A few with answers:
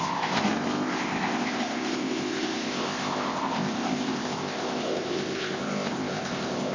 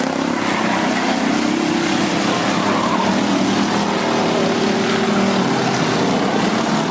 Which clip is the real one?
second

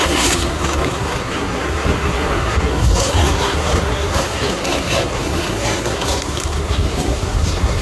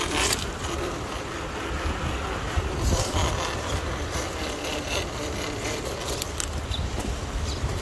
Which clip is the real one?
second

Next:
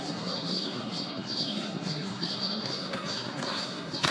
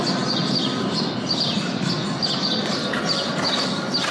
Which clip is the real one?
second